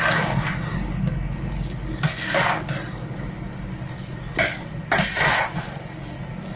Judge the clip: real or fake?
real